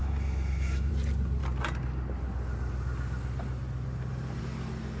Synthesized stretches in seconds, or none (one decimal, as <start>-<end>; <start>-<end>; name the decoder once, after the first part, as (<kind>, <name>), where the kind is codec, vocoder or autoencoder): 0.0-0.9 (autoencoder, DAC-VAE)

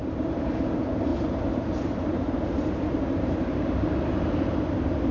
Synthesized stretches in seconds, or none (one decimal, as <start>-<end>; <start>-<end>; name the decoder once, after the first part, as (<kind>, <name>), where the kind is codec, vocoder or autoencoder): 0.0-0.7 (vocoder, BigVGAN v2); 1.1-3.5

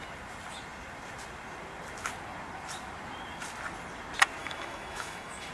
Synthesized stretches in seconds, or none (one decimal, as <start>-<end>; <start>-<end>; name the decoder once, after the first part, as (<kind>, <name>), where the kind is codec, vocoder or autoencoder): 4.4-5.5 (autoencoder, DAC-VAE)

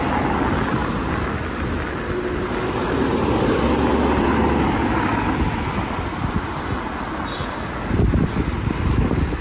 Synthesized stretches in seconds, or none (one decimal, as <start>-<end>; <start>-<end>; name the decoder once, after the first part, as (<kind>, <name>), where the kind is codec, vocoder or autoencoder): none

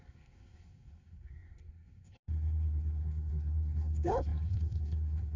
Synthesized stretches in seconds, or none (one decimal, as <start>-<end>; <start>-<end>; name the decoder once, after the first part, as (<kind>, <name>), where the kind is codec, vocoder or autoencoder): 0.0-5.4 (codec, SNAC)